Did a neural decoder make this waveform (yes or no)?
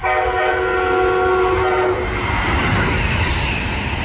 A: no